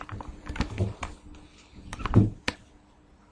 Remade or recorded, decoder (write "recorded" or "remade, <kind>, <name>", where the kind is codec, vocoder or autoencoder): recorded